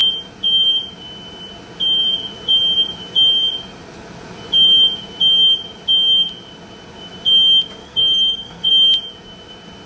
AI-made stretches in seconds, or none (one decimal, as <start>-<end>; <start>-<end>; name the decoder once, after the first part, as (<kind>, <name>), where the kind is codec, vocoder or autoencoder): 7.8-8.7 (codec, SNAC)